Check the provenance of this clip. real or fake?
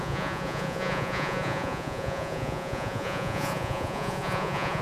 fake